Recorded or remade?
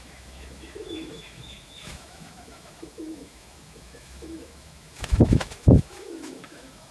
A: remade